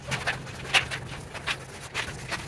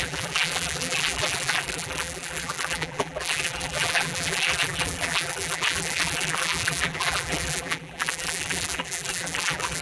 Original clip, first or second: first